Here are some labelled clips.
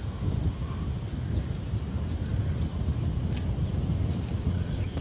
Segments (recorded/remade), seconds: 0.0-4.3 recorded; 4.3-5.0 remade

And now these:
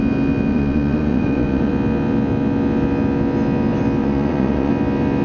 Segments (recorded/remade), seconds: 0.0-0.5 recorded; 0.5-1.7 remade; 1.7-4.0 recorded; 4.0-4.7 remade; 4.7-5.2 recorded

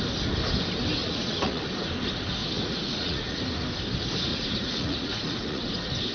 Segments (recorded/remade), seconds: 0.0-1.0 recorded; 1.0-1.6 remade; 1.6-2.4 recorded; 2.4-3.4 remade; 3.4-4.3 recorded; 4.3-5.6 remade; 5.6-6.1 recorded

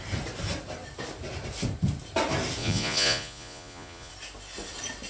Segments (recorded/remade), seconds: 0.0-2.6 recorded; 2.6-4.1 remade; 4.1-5.1 recorded

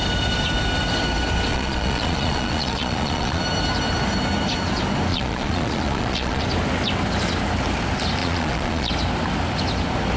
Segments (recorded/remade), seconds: 0.0-1.5 recorded; 1.5-3.4 remade; 3.4-5.1 recorded; 5.1-6.4 remade; 6.4-8.2 recorded; 8.2-8.9 remade; 8.9-10.2 recorded